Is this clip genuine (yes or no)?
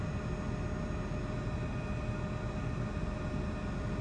yes